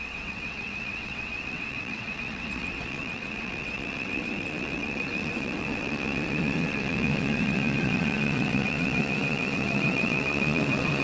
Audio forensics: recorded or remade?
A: remade